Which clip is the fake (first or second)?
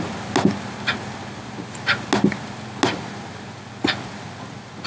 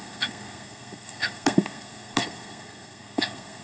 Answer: second